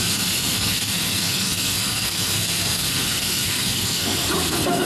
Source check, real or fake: fake